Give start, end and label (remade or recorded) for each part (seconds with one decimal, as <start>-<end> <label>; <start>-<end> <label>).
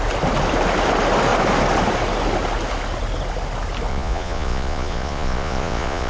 0.0-3.9 recorded; 3.9-6.1 remade